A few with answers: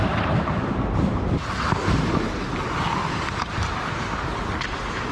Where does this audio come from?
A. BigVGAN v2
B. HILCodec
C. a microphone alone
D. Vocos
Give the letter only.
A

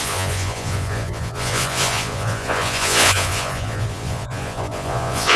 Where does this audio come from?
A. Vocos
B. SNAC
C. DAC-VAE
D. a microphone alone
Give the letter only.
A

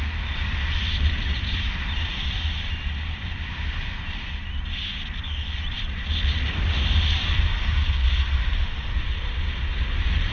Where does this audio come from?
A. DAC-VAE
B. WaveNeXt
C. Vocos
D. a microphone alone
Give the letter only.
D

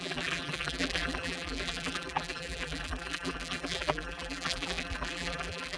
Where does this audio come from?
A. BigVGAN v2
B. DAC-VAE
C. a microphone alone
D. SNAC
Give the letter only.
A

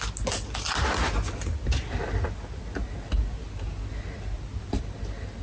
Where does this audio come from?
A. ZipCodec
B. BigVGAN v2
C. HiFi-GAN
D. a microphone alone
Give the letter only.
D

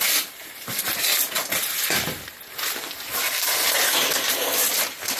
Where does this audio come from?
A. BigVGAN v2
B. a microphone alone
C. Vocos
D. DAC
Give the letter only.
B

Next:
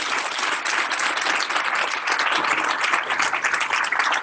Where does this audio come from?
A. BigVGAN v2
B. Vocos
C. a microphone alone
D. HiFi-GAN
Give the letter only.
C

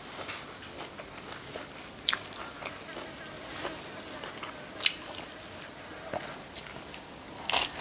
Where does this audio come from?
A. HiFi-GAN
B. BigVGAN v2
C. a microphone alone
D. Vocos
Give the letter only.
C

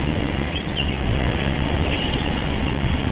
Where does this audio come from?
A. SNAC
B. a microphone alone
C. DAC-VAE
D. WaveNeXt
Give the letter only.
D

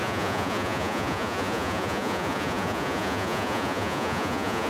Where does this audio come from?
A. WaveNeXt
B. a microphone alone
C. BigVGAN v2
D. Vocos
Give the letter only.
D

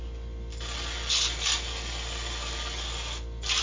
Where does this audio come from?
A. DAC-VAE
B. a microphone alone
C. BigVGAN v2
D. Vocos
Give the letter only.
B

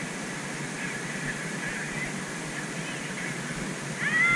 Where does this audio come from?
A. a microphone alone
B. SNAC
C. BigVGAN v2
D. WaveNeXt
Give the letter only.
A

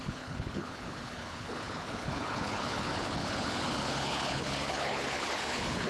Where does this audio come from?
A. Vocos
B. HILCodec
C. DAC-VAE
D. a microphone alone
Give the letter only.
B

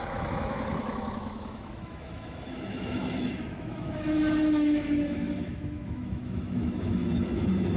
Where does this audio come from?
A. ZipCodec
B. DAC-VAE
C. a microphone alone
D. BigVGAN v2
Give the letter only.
B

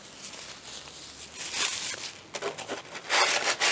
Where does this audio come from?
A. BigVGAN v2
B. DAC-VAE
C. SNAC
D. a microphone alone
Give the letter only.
D